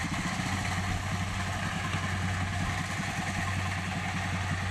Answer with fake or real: real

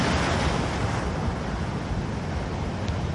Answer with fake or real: real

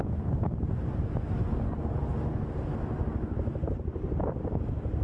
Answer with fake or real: real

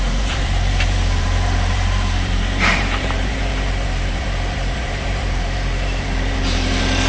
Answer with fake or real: fake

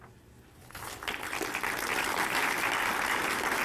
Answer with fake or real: real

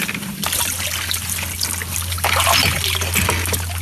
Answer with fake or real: real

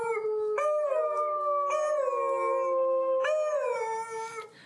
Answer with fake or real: real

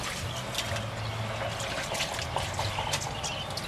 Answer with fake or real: real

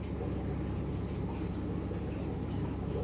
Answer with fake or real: real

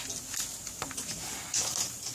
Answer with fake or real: real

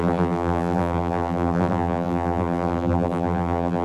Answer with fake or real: fake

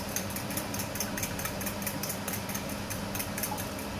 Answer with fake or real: fake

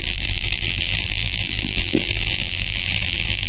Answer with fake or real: fake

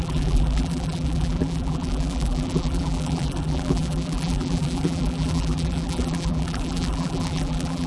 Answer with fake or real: fake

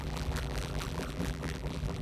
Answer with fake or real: fake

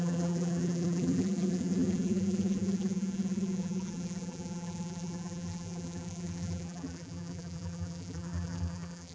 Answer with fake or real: fake